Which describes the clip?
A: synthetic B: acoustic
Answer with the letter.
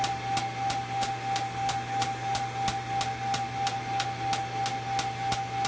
B